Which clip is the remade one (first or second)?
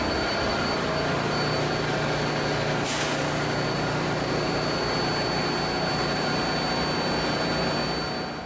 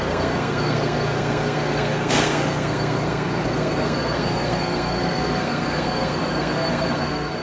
second